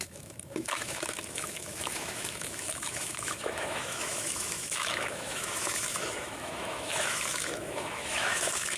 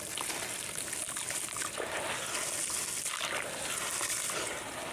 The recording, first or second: second